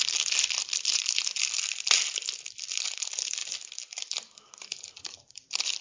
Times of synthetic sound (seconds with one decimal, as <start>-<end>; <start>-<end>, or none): 0.0-1.2; 2.6-3.4; 4.5-5.8